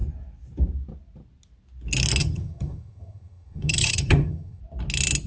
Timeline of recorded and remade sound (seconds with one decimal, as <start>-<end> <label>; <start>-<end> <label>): 0.0-2.2 recorded; 2.2-4.6 remade; 4.6-5.3 recorded